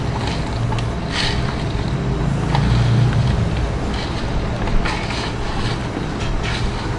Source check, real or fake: real